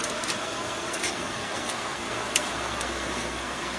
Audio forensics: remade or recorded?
remade